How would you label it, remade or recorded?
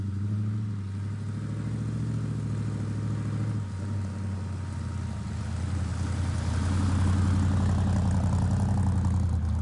recorded